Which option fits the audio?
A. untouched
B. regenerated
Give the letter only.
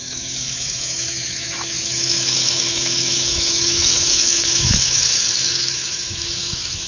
B